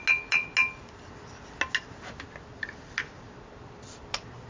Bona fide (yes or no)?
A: yes